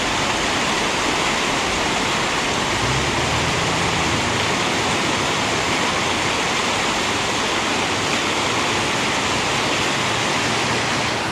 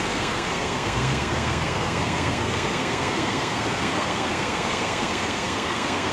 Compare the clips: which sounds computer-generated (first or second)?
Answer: second